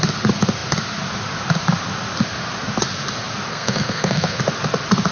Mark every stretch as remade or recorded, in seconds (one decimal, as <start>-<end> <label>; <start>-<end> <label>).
0.0-3.5 recorded; 3.5-4.4 remade; 4.4-5.1 recorded